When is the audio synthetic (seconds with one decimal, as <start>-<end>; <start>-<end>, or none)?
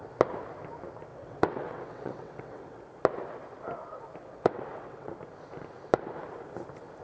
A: 1.1-2.8; 4.2-5.1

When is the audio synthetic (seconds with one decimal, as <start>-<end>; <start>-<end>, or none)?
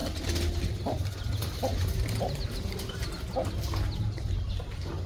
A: none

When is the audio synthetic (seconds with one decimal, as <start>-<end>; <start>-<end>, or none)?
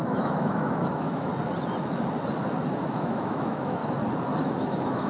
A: 0.0-1.3; 2.7-3.8; 4.4-5.1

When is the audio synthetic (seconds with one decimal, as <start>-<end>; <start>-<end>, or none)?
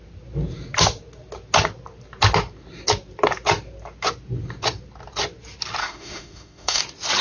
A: 5.8-6.8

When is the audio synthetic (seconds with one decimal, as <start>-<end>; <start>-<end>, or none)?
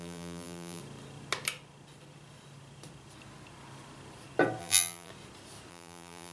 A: 0.0-0.8; 4.6-5.1; 5.7-6.3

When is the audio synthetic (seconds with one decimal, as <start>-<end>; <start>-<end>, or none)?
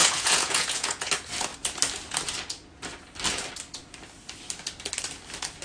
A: 0.0-1.1